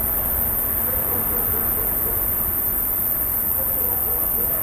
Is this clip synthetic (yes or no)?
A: no